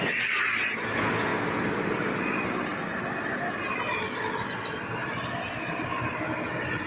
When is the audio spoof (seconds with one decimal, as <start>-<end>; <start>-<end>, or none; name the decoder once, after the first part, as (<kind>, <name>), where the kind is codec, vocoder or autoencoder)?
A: none